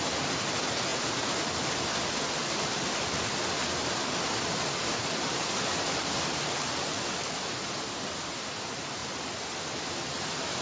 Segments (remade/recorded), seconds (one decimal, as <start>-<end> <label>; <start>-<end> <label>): 0.0-10.6 recorded

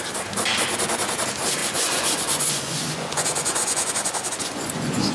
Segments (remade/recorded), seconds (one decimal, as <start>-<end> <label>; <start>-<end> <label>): 0.0-1.6 recorded; 1.6-5.1 remade